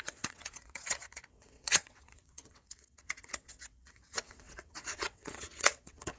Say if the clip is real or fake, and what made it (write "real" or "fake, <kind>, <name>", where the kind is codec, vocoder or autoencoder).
fake, vocoder, WaveNeXt